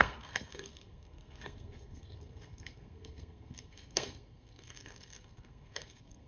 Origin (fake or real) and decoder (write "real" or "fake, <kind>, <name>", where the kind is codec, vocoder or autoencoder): fake, codec, SNAC